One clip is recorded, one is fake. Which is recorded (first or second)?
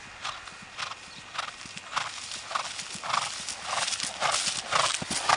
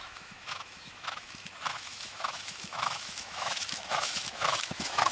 first